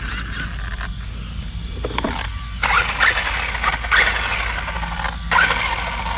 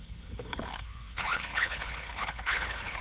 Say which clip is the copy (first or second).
second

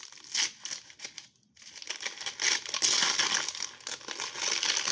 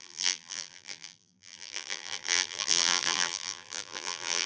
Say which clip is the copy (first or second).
second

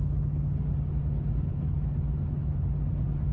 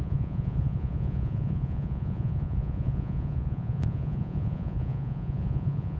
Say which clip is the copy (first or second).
second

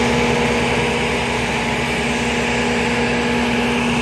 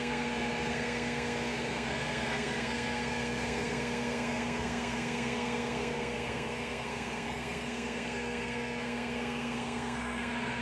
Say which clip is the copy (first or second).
second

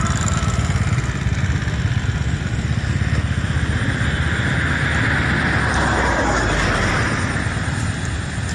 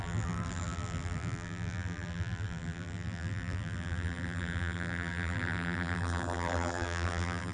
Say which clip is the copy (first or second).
second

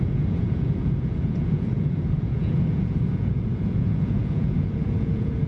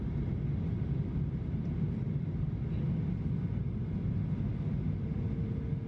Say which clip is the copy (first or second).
first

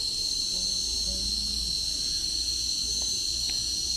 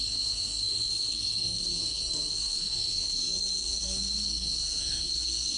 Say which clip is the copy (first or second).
second